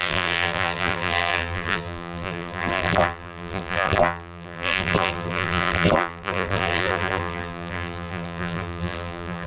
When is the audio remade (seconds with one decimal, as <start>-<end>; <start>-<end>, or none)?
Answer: 0.0-9.5